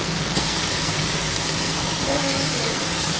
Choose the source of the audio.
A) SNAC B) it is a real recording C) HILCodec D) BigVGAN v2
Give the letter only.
A